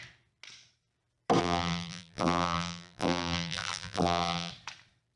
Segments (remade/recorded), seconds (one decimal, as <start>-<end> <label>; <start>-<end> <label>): 0.0-1.4 recorded; 1.4-4.5 remade; 4.5-5.2 recorded